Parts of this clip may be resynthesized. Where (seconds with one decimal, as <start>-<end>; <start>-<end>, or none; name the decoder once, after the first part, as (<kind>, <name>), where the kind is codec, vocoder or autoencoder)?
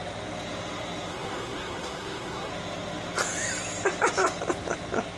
1.1-2.5 (codec, SNAC)